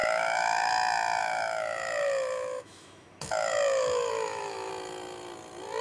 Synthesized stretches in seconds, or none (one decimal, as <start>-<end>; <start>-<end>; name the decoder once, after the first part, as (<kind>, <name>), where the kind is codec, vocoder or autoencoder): 0.0-0.7 (autoencoder, DAC-VAE); 1.2-4.7

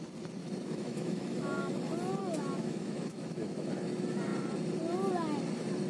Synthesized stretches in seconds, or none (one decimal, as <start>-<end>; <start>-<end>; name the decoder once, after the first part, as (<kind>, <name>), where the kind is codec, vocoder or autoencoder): 0.4-1.7 (autoencoder, DAC-VAE); 2.2-3.7

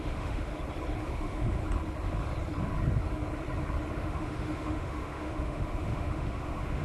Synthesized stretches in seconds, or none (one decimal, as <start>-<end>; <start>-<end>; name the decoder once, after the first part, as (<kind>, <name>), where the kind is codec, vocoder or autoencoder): 0.0-0.5 (autoencoder, DAC-VAE); 1.0-1.6; 3.9-6.8